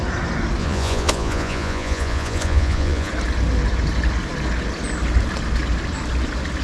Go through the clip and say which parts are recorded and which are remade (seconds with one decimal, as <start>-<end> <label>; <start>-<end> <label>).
0.0-0.6 recorded; 0.6-3.1 remade; 3.1-6.6 recorded